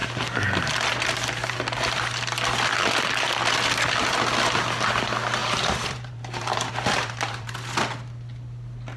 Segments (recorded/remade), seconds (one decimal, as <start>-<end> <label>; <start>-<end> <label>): 0.0-5.4 recorded; 5.4-7.5 remade; 7.5-9.0 recorded